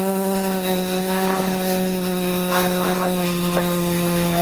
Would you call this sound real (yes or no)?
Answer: no